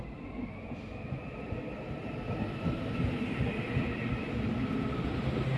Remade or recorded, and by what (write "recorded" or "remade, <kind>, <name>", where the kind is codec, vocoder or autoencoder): recorded